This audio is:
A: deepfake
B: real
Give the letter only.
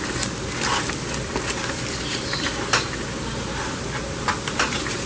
B